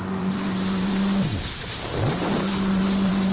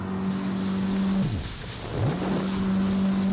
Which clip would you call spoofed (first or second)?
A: first